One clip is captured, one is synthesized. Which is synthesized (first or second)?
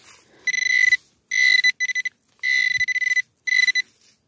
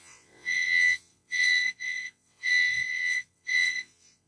second